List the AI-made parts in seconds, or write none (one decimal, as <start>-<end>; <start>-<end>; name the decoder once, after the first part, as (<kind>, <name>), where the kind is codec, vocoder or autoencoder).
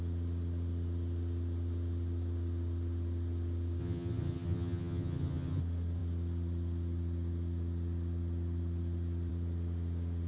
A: 3.8-5.6 (vocoder, HiFi-GAN)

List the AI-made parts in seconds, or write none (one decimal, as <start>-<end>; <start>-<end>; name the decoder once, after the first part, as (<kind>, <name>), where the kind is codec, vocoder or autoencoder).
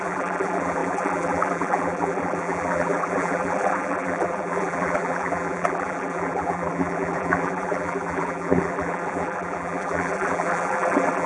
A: 0.0-11.3 (vocoder, BigVGAN v2)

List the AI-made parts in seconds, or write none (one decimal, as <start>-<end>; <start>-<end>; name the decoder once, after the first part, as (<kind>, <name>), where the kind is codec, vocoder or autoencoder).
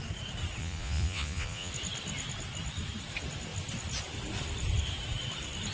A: 0.6-1.7 (vocoder, Vocos)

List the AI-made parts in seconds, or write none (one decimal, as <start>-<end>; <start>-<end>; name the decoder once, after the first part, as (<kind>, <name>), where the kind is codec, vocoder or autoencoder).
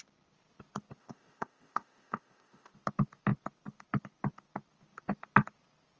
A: 1.0-2.7 (codec, ZipCodec)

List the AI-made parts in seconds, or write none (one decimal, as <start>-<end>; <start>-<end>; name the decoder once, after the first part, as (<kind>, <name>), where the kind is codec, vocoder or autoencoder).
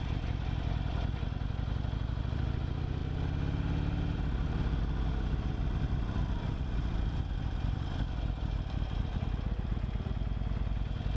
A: none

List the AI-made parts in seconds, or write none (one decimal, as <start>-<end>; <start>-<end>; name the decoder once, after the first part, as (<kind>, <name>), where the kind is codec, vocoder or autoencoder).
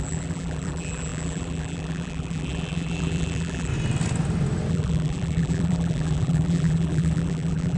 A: 0.0-3.7 (vocoder, BigVGAN v2); 4.7-7.8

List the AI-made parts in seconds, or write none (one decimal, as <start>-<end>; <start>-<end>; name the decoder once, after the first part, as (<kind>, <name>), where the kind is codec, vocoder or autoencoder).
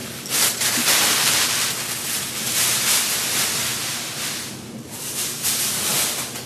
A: 3.7-5.9 (vocoder, BigVGAN v2)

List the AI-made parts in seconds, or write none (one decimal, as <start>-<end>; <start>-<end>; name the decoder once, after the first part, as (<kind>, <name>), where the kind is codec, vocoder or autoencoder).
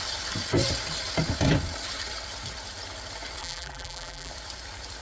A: 3.4-4.3 (vocoder, BigVGAN v2)